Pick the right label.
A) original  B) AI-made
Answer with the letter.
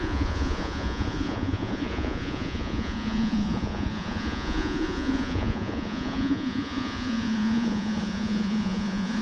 B